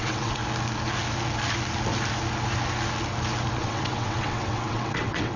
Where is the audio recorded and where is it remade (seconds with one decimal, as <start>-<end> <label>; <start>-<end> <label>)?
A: 0.0-0.4 remade; 0.4-3.6 recorded; 3.6-5.4 remade